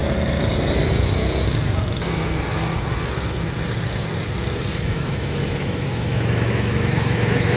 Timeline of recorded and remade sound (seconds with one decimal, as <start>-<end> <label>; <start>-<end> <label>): 0.0-4.7 recorded; 4.7-7.6 remade